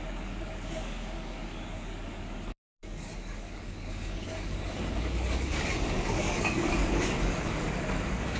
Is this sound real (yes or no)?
no